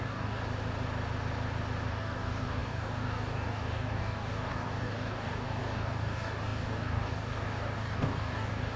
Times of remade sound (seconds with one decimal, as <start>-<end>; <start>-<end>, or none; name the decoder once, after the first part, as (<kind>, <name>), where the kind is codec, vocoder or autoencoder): 0.0-0.4 (codec, DAC); 1.9-8.8